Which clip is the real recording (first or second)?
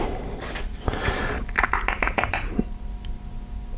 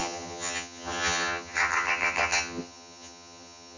first